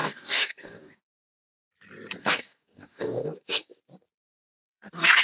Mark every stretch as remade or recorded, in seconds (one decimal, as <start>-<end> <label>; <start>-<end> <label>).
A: 0.0-1.0 remade; 1.0-2.2 recorded; 2.2-3.8 remade; 3.8-4.2 recorded; 4.2-5.2 remade